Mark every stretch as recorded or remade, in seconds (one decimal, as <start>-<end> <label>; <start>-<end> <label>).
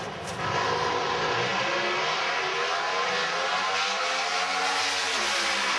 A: 0.0-5.8 recorded